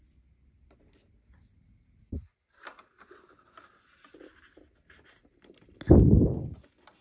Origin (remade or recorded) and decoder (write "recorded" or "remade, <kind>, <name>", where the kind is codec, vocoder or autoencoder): recorded